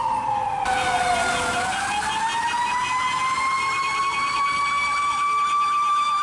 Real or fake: real